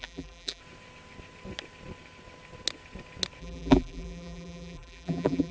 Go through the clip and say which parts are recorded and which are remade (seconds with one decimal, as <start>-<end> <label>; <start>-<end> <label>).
0.0-0.6 remade; 0.6-3.4 recorded; 3.4-5.5 remade

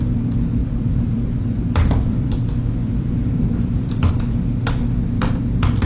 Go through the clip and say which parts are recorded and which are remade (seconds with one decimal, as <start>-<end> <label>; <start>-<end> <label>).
0.0-0.6 recorded; 0.6-4.1 remade; 4.1-5.9 recorded